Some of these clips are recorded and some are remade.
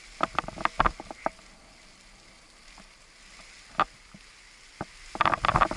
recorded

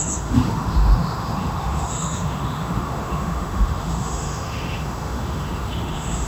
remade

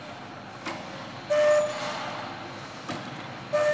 recorded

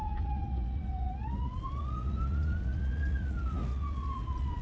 remade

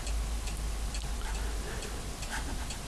recorded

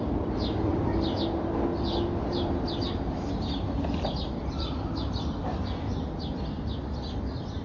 recorded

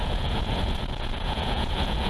remade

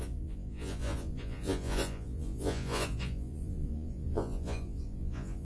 remade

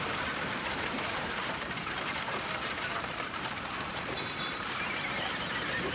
remade